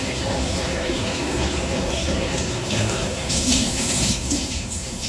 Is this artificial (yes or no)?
yes